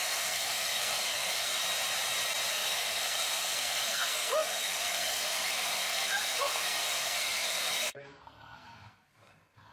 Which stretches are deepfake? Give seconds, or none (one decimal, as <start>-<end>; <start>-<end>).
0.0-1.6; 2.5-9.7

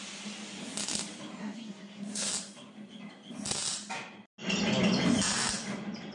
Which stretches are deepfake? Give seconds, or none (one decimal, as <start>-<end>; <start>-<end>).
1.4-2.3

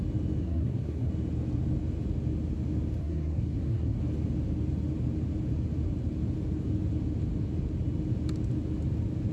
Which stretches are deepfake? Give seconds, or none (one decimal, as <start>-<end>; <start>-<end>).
0.4-1.1; 3.0-4.0

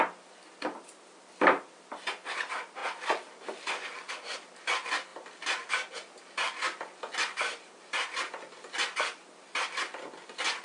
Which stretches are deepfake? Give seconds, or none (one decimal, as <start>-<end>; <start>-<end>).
none

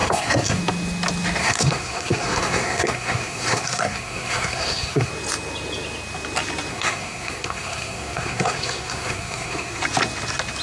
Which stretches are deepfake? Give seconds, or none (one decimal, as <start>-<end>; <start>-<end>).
0.0-0.6; 1.4-5.1; 6.7-9.8

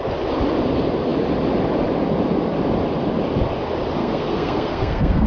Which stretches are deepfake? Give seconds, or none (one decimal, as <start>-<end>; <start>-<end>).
4.0-5.3

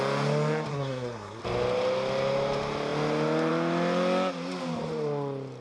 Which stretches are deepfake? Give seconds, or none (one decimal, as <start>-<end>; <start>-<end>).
0.7-1.4